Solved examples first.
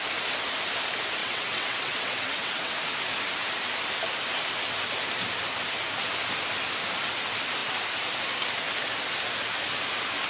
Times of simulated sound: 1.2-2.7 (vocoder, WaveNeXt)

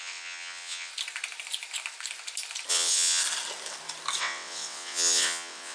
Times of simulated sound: 0.0-0.9 (vocoder, WaveNeXt); 2.7-3.2; 4.2-5.7

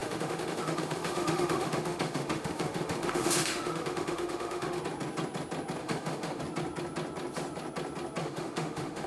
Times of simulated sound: 0.0-4.8 (autoencoder, DAC-VAE); 5.8-6.4; 8.2-9.1